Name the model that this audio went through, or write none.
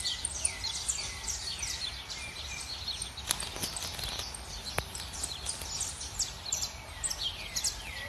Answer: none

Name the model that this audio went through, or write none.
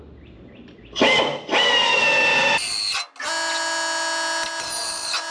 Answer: none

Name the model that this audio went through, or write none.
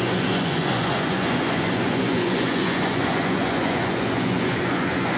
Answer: vocoder, Vocos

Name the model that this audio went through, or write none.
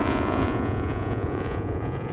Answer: vocoder, Vocos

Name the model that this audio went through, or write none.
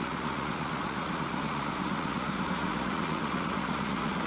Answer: vocoder, Vocos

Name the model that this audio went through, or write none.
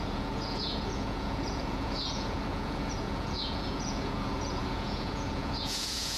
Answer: vocoder, Vocos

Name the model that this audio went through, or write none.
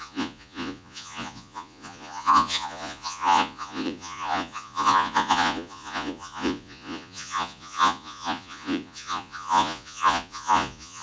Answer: vocoder, Vocos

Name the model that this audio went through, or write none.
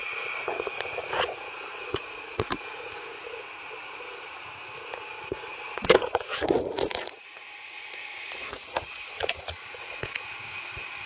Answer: vocoder, Vocos